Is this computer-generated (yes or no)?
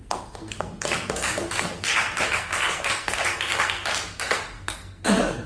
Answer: yes